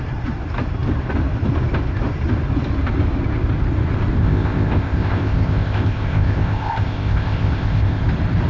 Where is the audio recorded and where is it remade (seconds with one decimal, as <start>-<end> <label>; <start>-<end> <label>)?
0.0-4.2 recorded; 4.2-8.0 remade; 8.0-8.5 recorded